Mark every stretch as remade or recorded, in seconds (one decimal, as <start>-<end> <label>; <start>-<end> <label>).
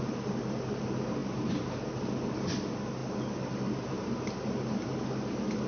0.0-1.2 recorded; 1.2-1.9 remade; 1.9-5.7 recorded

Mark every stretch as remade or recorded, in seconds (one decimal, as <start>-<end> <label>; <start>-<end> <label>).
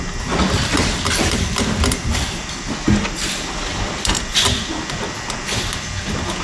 0.0-0.7 recorded; 0.7-4.2 remade; 4.2-6.4 recorded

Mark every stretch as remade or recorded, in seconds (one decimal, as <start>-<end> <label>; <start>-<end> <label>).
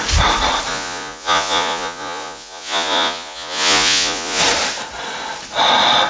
0.0-0.7 recorded; 0.7-4.4 remade; 4.4-6.1 recorded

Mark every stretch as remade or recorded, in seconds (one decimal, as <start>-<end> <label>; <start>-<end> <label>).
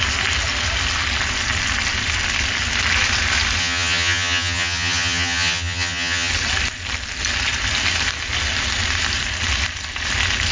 0.0-3.6 recorded; 3.6-6.3 remade; 6.3-10.5 recorded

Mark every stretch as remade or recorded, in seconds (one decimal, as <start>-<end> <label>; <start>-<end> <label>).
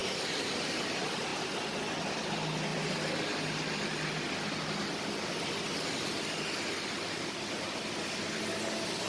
0.0-9.1 recorded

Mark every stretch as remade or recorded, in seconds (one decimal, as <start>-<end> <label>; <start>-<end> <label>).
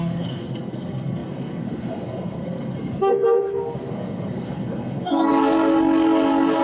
0.0-5.3 remade; 5.3-6.6 recorded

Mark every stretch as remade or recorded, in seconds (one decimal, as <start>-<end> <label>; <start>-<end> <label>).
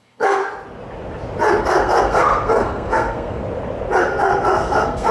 0.0-0.4 remade; 0.4-1.6 recorded; 1.6-3.4 remade; 3.4-4.0 recorded; 4.0-5.1 remade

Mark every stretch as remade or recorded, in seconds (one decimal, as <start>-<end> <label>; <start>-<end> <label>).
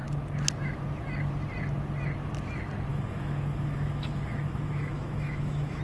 0.0-2.9 recorded; 2.9-5.8 remade